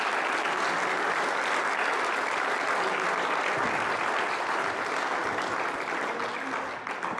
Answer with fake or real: real